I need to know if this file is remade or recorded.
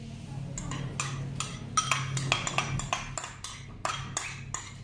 recorded